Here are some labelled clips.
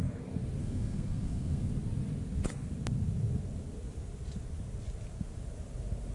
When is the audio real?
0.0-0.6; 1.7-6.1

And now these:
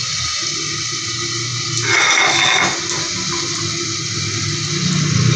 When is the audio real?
0.0-5.4

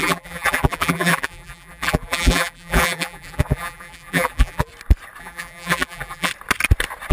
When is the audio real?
4.7-5.2; 6.3-7.1